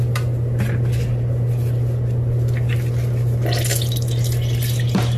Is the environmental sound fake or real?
real